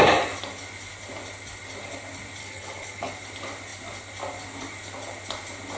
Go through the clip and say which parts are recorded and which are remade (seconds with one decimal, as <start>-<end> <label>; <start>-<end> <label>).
0.0-2.4 recorded; 2.4-3.1 remade; 3.1-5.8 recorded